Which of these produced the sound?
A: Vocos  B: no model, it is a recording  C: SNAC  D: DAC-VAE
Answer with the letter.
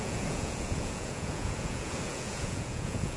A